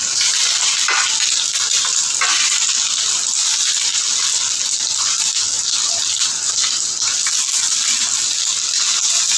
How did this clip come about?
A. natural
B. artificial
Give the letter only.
A